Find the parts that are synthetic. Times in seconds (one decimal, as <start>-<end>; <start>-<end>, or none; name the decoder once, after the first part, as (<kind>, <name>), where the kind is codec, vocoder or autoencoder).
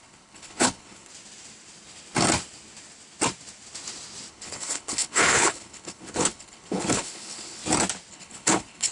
0.0-1.1 (codec, HILCodec); 4.3-7.6; 8.1-8.9